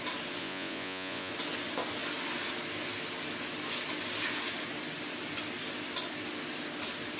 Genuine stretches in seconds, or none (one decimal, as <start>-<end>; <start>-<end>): 0.0-0.4; 1.3-7.2